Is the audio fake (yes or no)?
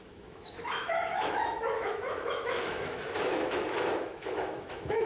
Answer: yes